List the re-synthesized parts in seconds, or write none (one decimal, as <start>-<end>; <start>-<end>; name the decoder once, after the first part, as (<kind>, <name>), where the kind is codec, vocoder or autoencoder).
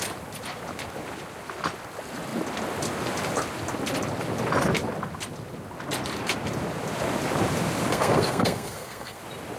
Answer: 7.9-9.2 (codec, SNAC)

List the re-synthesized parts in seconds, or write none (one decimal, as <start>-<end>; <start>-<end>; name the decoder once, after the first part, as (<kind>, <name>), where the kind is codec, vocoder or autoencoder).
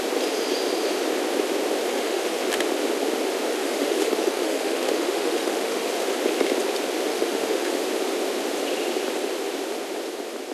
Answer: 1.9-2.5 (autoencoder, DAC-VAE); 3.6-5.9; 7.1-7.8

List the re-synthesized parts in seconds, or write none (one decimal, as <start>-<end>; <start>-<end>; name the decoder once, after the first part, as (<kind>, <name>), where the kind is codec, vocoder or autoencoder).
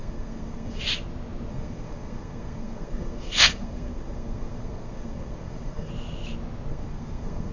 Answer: 0.0-0.8 (codec, SNAC); 1.5-5.9; 6.7-7.5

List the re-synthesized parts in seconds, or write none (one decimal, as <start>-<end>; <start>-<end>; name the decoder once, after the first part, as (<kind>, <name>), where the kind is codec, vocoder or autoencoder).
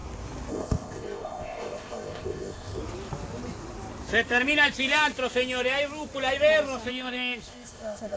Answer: 0.5-2.8 (codec, ZipCodec); 6.9-8.2